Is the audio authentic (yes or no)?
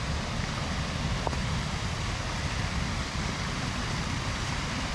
no